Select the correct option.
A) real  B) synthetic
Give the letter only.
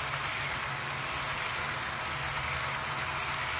A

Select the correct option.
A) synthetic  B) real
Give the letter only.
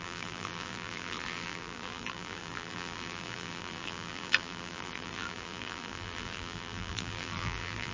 A